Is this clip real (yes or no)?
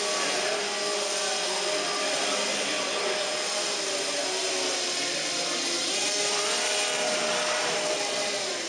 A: yes